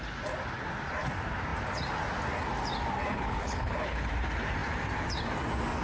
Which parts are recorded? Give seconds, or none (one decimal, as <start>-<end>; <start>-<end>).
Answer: 0.0-3.1; 4.1-5.8